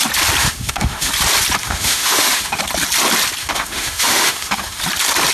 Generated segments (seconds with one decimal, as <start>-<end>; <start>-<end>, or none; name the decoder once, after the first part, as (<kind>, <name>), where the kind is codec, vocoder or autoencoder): 0.4-1.1 (autoencoder, DAC-VAE); 1.6-2.6; 3.4-4.8